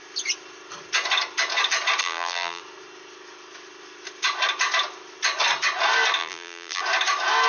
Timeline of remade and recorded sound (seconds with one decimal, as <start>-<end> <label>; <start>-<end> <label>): 0.0-2.0 recorded; 2.0-2.6 remade; 2.6-6.2 recorded; 6.2-6.8 remade; 6.8-7.5 recorded